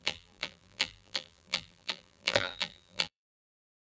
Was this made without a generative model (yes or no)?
no